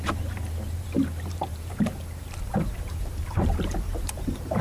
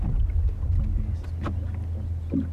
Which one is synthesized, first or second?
first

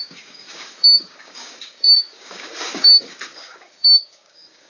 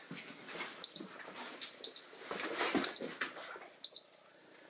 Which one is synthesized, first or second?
first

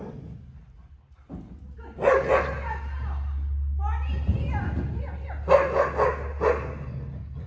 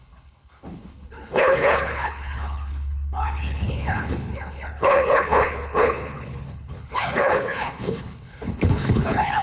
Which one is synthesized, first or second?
second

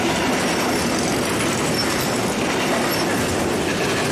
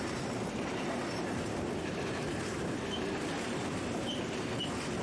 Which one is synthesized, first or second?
second